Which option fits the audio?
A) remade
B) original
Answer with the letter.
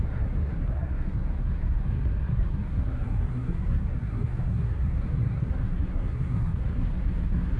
A